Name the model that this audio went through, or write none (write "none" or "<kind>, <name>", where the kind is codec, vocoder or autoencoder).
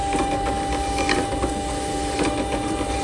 none